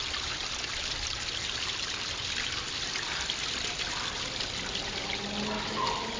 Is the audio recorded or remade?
recorded